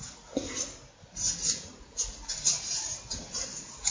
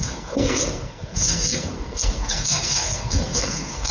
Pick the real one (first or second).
first